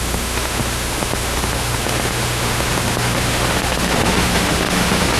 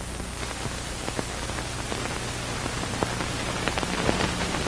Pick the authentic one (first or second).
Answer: second